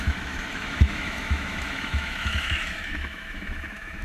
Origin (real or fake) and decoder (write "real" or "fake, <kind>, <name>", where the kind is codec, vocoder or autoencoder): fake, autoencoder, DAC-VAE